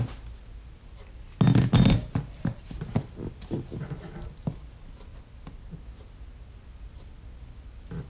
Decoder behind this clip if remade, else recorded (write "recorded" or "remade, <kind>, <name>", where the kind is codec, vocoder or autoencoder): recorded